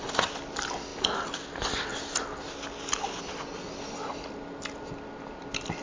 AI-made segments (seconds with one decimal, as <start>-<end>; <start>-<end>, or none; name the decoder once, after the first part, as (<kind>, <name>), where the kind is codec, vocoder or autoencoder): none